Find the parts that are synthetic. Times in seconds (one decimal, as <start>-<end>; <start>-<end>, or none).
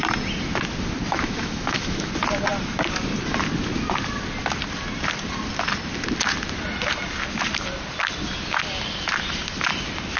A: 1.1-2.1